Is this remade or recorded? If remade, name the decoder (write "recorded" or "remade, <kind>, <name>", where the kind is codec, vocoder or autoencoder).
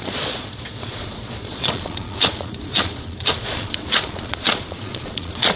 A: remade, vocoder, Vocos